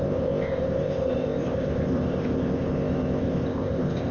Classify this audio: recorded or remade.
remade